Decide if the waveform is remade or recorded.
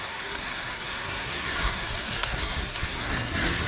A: remade